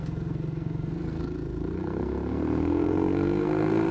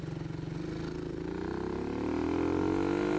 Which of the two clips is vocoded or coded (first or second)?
first